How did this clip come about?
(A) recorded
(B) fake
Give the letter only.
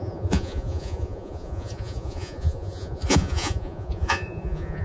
B